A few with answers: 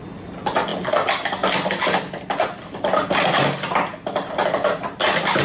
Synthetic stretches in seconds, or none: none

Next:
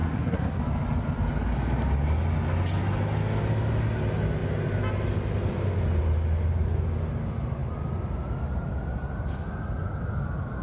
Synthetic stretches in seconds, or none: 0.0-0.6 (codec, SNAC)

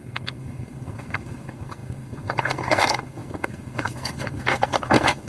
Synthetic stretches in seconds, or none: 0.0-5.3 (codec, SNAC)

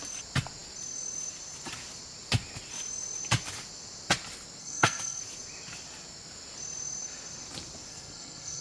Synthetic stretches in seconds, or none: 4.6-5.2 (codec, SNAC); 7.9-8.6

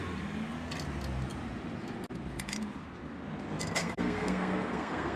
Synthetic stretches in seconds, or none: 3.8-5.2 (codec, SNAC)

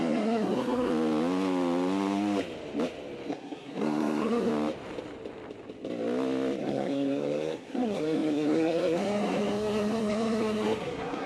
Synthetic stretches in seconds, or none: 0.0-0.9 (codec, SNAC); 3.3-4.5; 6.6-11.3

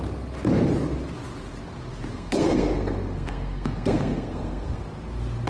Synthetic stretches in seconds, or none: 2.1-4.8 (codec, SNAC)